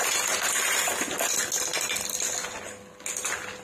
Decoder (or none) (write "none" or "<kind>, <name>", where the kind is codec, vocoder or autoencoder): none